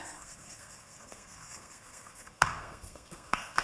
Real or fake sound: fake